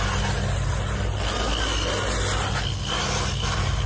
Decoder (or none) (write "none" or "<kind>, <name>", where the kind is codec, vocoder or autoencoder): none